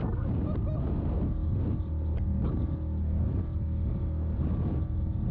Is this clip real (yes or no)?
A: yes